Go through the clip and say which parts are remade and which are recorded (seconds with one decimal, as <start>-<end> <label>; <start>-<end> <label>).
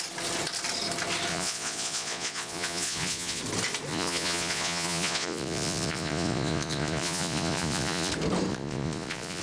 0.0-1.3 recorded; 1.3-3.4 remade; 3.4-3.9 recorded; 3.9-8.1 remade; 8.1-8.5 recorded; 8.5-9.4 remade